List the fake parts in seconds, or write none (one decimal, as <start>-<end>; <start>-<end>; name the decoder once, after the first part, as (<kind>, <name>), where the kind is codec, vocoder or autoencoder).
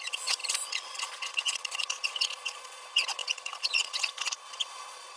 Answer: 0.0-5.2 (vocoder, Vocos)